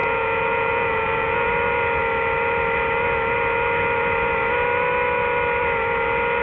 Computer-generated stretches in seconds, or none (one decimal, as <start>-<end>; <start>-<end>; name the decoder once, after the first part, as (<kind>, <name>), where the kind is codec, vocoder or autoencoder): 0.0-1.5 (vocoder, Vocos)